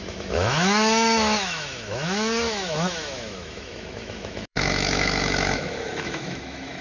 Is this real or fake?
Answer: fake